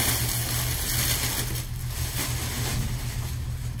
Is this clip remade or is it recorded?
recorded